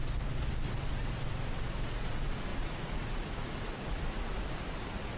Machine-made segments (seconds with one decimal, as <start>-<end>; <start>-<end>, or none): 2.5-4.3